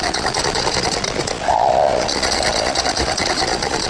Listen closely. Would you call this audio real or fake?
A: fake